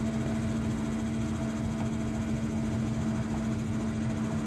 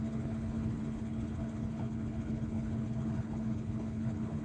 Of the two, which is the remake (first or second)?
second